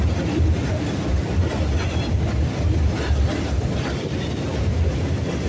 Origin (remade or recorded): recorded